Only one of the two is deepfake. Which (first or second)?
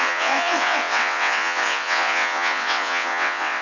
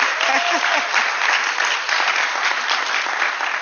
first